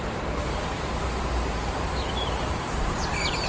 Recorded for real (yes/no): no